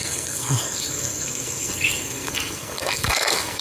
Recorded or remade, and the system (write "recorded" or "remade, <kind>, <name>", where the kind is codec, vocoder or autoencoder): remade, codec, SNAC